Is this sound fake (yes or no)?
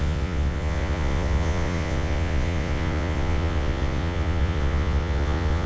yes